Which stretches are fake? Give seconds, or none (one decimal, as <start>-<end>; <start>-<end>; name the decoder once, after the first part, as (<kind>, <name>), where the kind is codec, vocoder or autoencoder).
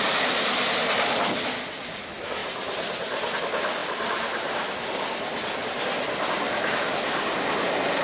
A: none